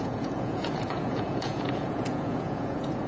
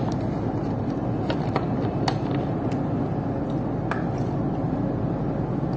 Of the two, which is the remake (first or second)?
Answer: first